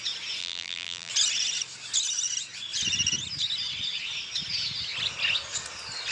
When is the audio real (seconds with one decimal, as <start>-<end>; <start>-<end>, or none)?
0.0-0.4; 1.1-6.1

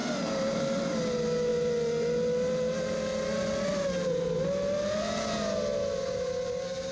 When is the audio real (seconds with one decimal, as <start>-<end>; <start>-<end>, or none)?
0.8-6.9